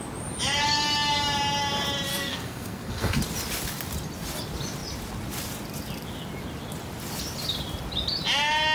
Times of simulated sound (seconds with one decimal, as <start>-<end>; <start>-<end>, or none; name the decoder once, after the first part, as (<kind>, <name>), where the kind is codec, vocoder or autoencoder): 2.1-3.2 (codec, SNAC)